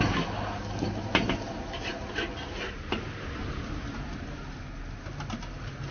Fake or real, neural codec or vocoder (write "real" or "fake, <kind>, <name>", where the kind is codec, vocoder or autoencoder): real